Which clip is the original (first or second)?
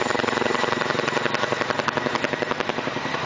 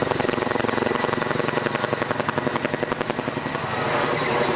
second